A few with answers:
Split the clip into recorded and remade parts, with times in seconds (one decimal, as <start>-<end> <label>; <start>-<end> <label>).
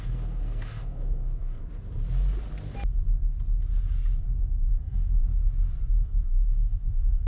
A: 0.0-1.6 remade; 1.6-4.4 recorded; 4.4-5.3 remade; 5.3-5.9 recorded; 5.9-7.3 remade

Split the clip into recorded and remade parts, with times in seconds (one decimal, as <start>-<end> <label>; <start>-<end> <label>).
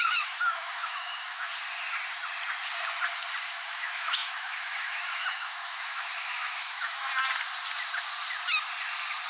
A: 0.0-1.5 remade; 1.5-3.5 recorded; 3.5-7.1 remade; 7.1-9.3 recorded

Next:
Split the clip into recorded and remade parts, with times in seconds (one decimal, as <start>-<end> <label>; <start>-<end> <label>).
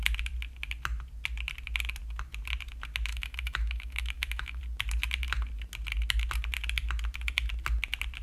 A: 0.0-3.1 recorded; 3.1-4.6 remade; 4.6-8.2 recorded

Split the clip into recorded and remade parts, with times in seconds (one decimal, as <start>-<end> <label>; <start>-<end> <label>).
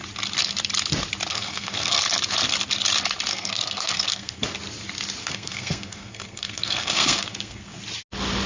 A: 0.0-1.3 recorded; 1.3-2.0 remade; 2.0-3.3 recorded; 3.3-4.4 remade; 4.4-5.2 recorded; 5.2-7.8 remade; 7.8-8.5 recorded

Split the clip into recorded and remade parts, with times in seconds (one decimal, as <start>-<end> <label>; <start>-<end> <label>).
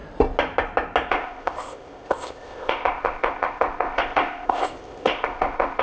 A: 0.0-1.1 recorded; 1.1-5.8 remade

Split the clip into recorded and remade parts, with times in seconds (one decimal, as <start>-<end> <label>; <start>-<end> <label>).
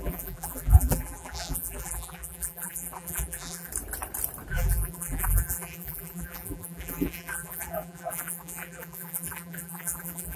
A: 0.0-3.7 remade; 3.7-4.5 recorded; 4.5-10.4 remade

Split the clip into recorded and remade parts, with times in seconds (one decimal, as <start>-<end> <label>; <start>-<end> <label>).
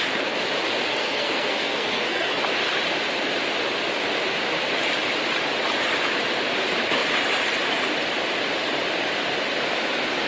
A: 0.0-0.9 recorded; 0.9-2.4 remade; 2.4-10.3 recorded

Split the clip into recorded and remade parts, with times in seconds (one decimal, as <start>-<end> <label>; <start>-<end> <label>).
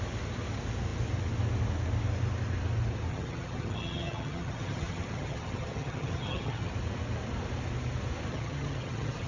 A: 0.0-3.1 recorded; 3.1-6.7 remade; 6.7-8.3 recorded; 8.3-9.3 remade